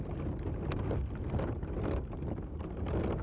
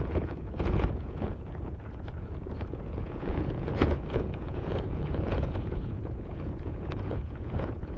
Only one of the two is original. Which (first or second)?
first